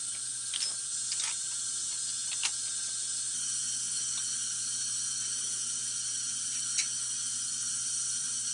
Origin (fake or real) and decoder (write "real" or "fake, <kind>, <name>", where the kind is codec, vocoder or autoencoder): real